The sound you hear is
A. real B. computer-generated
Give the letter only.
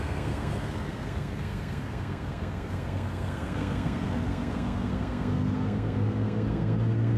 B